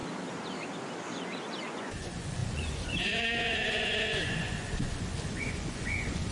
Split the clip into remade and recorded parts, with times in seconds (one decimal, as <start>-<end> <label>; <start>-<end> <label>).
0.0-1.6 recorded; 1.6-6.3 remade